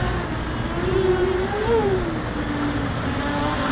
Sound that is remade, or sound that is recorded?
recorded